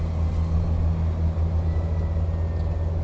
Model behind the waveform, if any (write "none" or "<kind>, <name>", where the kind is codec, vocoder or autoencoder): none